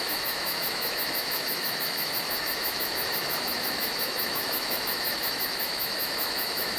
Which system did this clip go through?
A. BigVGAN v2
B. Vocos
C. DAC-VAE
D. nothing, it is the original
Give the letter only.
C